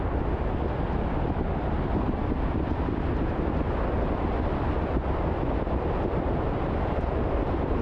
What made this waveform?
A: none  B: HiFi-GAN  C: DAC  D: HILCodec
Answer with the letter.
A